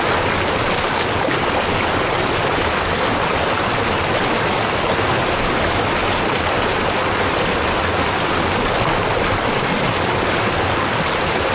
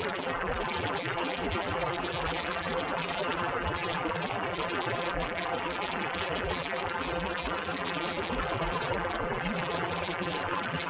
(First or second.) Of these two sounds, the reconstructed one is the second